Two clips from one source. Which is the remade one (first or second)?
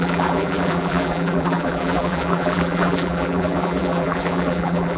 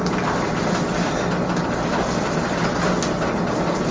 first